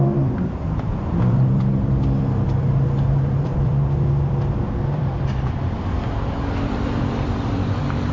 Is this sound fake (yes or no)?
yes